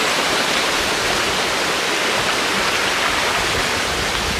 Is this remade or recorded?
recorded